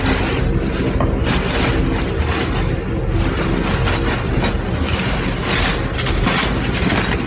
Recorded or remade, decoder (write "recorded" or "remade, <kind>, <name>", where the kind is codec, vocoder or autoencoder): recorded